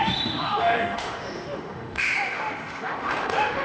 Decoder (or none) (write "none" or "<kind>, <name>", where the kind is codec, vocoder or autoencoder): autoencoder, DAC-VAE